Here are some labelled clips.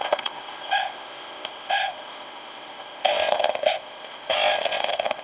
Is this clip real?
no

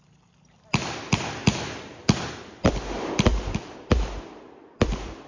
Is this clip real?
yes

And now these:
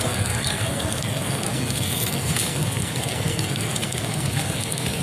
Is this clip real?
no